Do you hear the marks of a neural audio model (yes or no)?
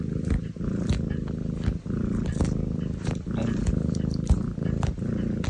no